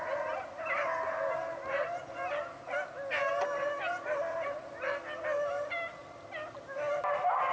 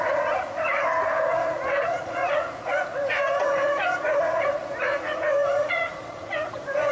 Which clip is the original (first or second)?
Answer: first